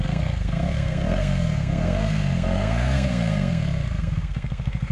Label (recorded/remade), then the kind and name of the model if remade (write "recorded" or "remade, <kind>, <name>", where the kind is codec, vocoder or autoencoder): remade, codec, SNAC